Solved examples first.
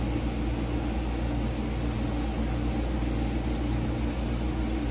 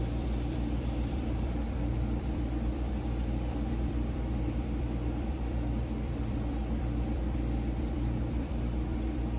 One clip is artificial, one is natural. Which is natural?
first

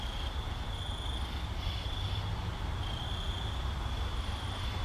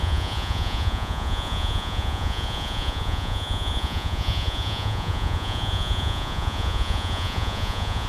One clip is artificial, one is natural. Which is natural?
first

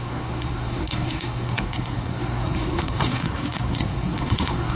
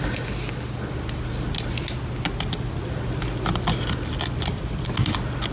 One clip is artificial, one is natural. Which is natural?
second